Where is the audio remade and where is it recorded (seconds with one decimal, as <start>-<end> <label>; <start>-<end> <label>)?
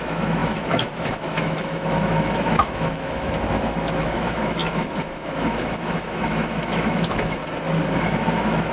0.0-7.4 remade; 7.4-8.0 recorded; 8.0-8.7 remade